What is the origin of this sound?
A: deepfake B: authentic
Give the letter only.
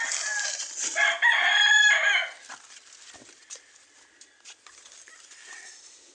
B